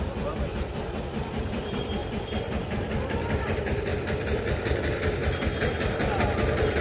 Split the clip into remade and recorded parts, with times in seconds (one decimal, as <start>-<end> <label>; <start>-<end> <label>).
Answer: 0.0-3.9 remade; 3.9-4.8 recorded; 4.8-5.2 remade; 5.2-6.8 recorded

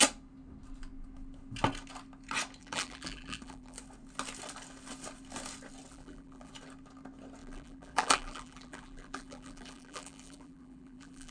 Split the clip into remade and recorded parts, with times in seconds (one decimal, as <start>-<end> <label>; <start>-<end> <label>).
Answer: 0.0-2.6 recorded; 2.6-3.8 remade; 3.8-5.9 recorded; 5.9-6.5 remade; 6.5-7.4 recorded; 7.4-11.3 remade

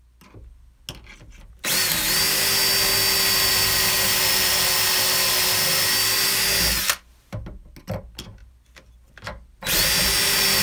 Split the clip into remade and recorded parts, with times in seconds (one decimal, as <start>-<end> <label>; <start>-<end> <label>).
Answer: 0.0-10.6 recorded

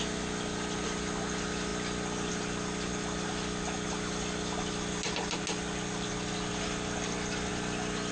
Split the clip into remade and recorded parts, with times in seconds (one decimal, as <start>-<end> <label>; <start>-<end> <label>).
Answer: 0.0-8.1 recorded

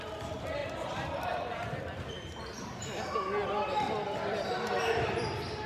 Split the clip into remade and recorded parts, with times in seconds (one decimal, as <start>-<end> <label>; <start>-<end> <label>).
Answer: 0.0-0.6 recorded; 0.6-2.9 remade; 2.9-5.7 recorded

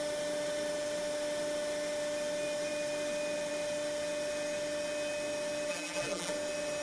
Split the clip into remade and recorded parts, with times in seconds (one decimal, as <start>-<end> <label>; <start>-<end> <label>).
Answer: 0.0-5.7 recorded; 5.7-6.3 remade; 6.3-6.8 recorded

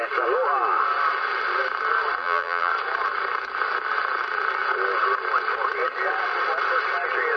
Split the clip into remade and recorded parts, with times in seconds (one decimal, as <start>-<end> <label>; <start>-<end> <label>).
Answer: 0.0-2.2 recorded; 2.2-2.7 remade; 2.7-7.4 recorded